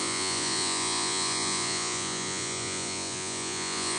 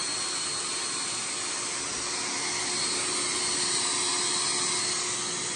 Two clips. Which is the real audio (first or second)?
second